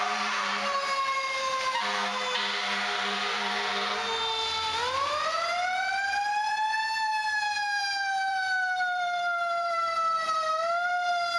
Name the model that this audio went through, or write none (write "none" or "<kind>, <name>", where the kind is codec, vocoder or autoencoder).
vocoder, BigVGAN v2